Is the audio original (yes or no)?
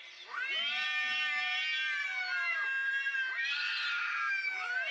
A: yes